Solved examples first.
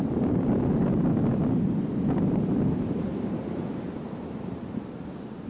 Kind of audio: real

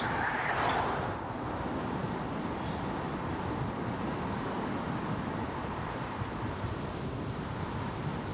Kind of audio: real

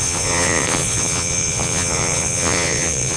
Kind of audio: fake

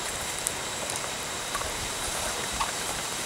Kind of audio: fake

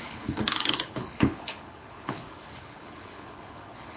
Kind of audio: fake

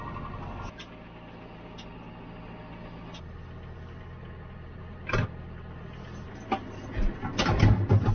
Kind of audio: real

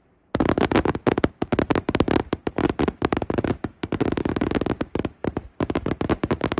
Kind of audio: fake